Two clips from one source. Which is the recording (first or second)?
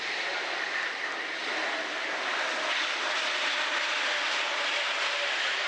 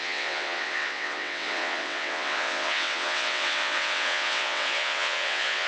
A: first